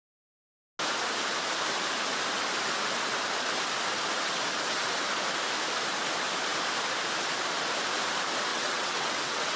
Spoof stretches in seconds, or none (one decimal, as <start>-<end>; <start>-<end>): 8.5-9.6